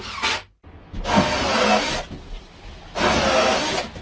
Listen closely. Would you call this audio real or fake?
real